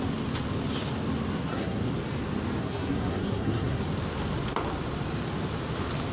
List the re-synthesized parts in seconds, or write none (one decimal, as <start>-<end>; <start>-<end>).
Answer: 1.3-1.9; 2.6-3.8